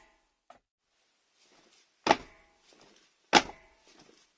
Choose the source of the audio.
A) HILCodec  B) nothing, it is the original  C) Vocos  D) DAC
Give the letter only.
B